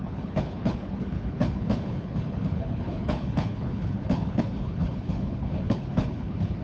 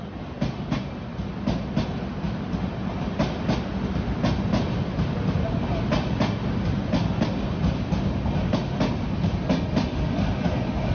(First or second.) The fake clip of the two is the first